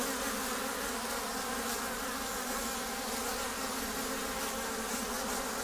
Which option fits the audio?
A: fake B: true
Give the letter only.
B